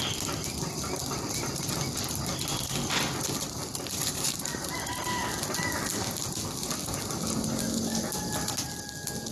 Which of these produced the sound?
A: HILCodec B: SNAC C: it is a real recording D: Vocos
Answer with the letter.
C